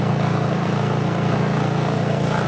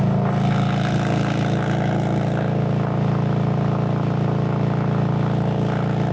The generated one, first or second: first